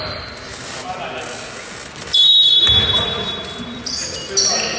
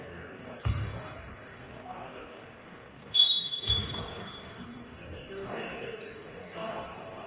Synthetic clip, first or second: second